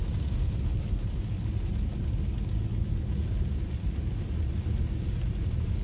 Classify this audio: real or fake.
real